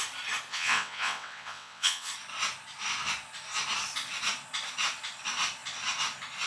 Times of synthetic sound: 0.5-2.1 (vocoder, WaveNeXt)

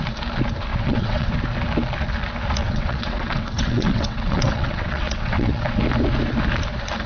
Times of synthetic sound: 0.7-1.3 (vocoder, WaveNeXt); 2.6-5.8

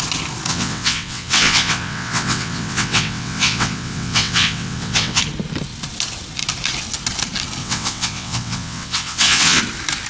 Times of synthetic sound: 0.5-5.2 (vocoder, WaveNeXt); 7.6-9.6

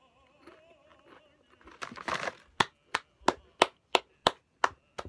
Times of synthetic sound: none